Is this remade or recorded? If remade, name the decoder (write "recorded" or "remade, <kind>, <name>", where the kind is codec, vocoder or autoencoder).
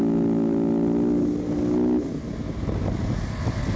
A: recorded